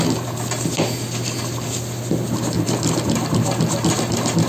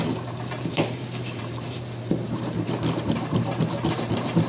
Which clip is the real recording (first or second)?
first